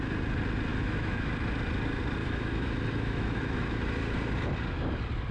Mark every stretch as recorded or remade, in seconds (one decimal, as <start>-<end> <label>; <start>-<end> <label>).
0.0-0.7 recorded; 0.7-1.3 remade; 1.3-2.2 recorded; 2.2-3.8 remade; 3.8-5.3 recorded